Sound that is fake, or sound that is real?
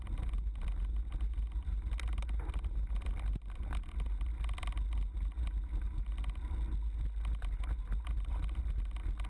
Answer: real